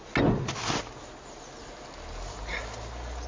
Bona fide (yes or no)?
yes